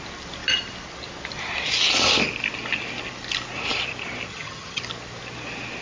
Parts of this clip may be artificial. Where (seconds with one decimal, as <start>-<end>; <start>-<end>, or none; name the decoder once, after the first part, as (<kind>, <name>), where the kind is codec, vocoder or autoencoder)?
4.3-4.8 (vocoder, HiFi-GAN)